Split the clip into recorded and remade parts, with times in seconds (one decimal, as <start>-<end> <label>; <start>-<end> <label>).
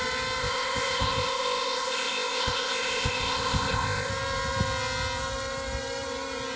0.0-0.4 recorded; 0.4-4.1 remade; 4.1-6.6 recorded